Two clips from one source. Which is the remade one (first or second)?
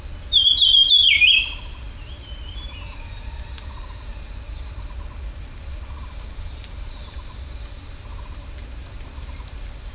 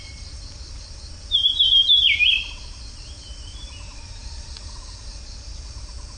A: second